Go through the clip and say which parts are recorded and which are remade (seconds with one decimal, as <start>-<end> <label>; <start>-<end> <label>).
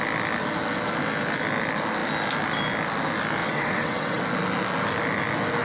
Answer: 0.0-3.4 recorded; 3.4-4.2 remade; 4.2-5.6 recorded